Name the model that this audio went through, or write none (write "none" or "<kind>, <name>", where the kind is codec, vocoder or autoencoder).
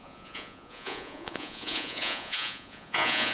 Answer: vocoder, Vocos